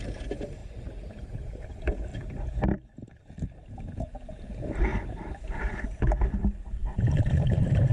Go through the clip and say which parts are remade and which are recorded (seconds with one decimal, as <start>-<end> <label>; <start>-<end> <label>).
0.0-0.6 recorded; 0.6-1.2 remade; 1.2-2.1 recorded; 2.1-4.3 remade; 4.3-4.9 recorded; 4.9-5.7 remade; 5.7-6.8 recorded; 6.8-7.9 remade